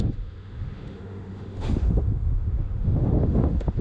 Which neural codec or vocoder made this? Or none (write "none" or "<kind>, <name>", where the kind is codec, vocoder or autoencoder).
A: autoencoder, DAC-VAE